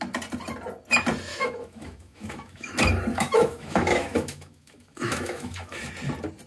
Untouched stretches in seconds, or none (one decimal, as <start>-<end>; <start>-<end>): 0.0-1.3; 2.7-3.1; 5.9-6.5